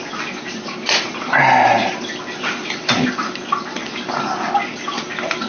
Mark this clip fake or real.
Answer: real